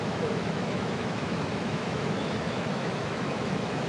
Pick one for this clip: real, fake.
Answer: fake